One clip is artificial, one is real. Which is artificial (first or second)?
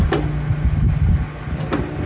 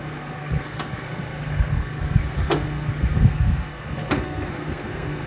second